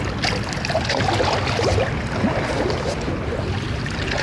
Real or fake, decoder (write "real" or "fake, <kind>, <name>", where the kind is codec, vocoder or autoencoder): real